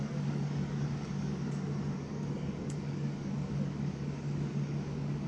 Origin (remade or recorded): remade